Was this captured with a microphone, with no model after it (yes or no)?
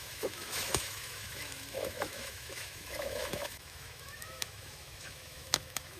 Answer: no